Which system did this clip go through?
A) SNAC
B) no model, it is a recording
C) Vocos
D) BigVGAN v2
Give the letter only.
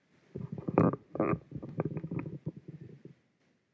B